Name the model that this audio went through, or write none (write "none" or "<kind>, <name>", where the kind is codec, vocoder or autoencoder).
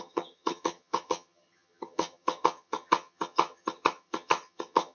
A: vocoder, HiFi-GAN